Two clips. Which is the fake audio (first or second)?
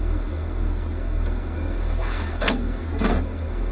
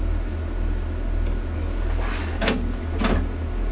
first